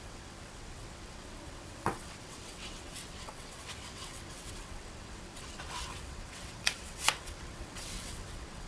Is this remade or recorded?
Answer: remade